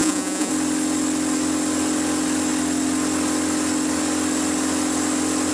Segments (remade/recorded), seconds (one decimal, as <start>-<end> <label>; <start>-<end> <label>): 0.0-0.5 remade; 0.5-5.5 recorded